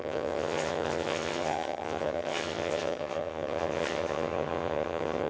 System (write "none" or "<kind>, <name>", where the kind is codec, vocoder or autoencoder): vocoder, HiFi-GAN